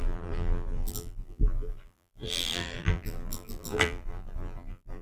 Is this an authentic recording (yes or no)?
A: no